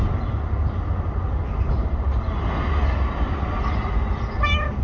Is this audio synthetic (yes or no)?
no